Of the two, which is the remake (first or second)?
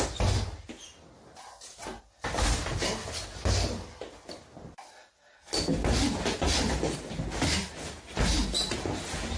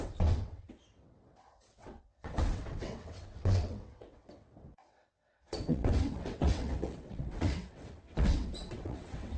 second